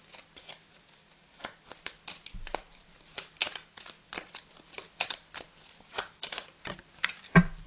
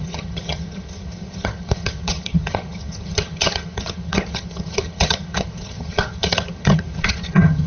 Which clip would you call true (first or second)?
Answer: first